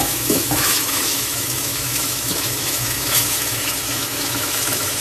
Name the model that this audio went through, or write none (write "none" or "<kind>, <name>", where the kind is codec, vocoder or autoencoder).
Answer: autoencoder, DAC-VAE